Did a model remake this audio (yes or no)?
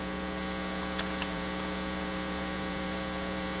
yes